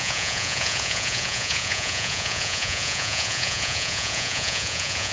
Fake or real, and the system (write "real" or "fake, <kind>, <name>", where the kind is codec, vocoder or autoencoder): fake, vocoder, Vocos